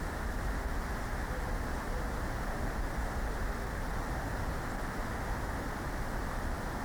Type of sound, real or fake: real